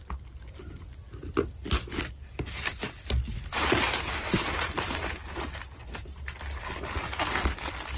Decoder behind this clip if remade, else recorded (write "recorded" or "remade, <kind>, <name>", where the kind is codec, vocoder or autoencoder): recorded